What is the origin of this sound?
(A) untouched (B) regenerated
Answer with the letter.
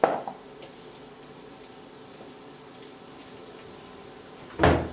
A